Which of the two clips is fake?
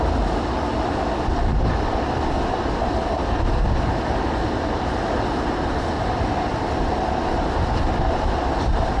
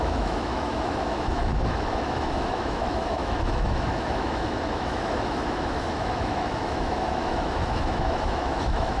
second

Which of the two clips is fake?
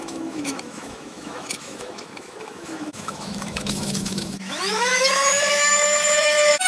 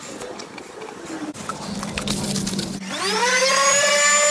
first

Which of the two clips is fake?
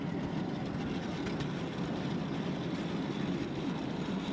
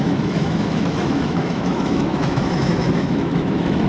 second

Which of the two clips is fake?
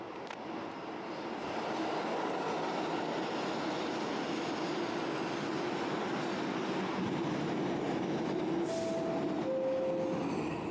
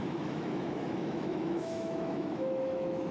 second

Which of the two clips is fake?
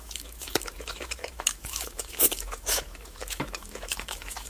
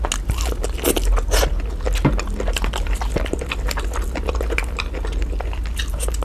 first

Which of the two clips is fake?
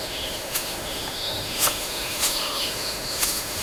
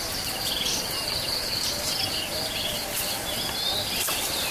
first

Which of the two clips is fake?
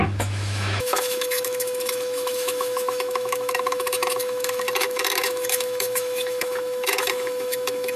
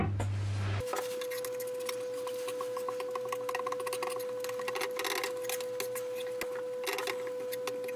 first